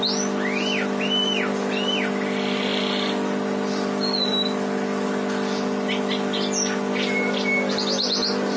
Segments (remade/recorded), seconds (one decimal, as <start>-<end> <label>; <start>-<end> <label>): 0.0-8.6 recorded